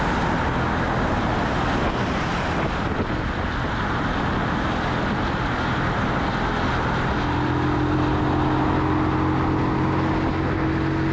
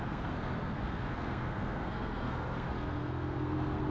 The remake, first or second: second